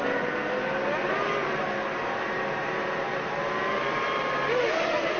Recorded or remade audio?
recorded